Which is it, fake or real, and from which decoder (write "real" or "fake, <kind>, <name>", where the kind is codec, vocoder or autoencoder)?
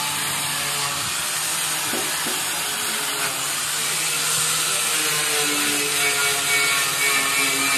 real